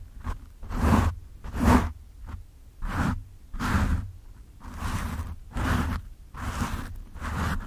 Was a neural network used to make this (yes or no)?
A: yes